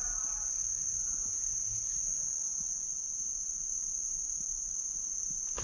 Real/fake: real